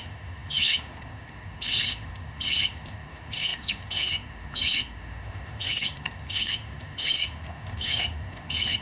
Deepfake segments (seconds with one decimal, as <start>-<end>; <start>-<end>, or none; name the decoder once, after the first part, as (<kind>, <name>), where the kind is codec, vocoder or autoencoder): 0.0-8.8 (autoencoder, DAC-VAE)